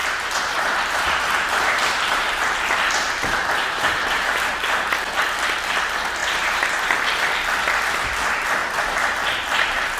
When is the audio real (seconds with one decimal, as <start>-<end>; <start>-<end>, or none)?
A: 2.8-3.4; 4.5-6.2; 7.0-10.0